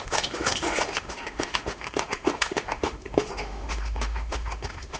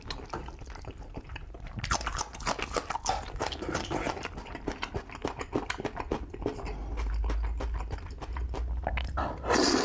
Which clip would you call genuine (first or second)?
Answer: second